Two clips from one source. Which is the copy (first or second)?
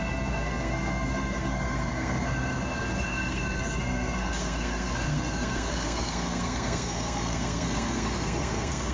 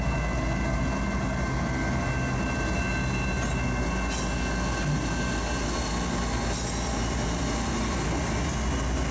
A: first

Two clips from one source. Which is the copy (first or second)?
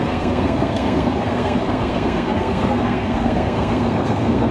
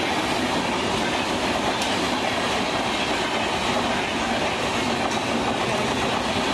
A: first